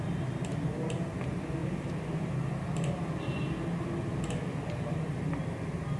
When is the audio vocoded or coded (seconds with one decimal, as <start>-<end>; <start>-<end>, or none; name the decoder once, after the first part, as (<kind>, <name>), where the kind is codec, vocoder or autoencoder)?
none